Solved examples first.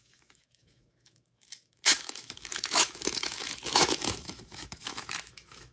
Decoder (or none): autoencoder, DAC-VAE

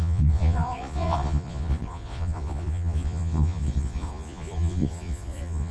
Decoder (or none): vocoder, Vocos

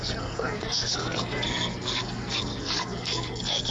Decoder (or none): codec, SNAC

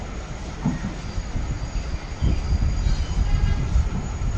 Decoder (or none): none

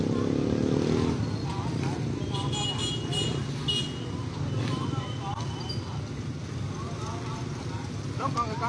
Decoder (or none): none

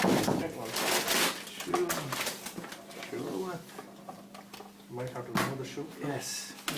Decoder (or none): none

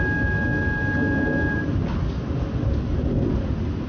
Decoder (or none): none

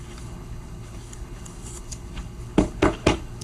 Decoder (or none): codec, HILCodec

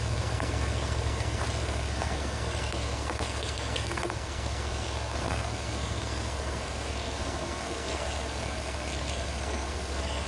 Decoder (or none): codec, SNAC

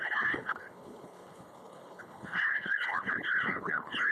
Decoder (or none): codec, HILCodec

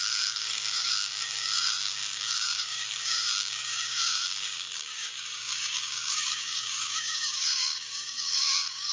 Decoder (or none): codec, DAC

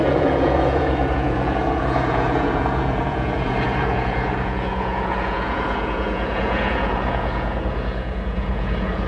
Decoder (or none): vocoder, Vocos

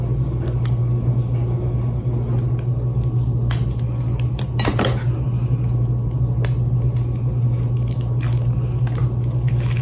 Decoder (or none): none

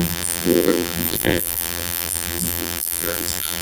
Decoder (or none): vocoder, BigVGAN v2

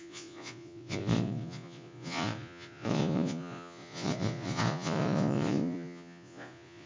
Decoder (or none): vocoder, Vocos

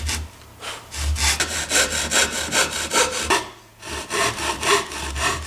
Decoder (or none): none